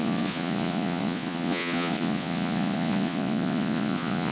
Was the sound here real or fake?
fake